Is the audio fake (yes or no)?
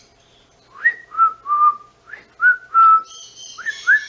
no